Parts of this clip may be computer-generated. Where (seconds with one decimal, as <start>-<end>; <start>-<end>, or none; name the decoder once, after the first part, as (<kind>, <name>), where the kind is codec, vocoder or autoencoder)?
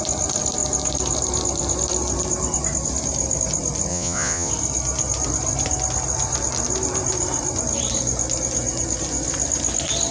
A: 3.9-4.5 (vocoder, Vocos)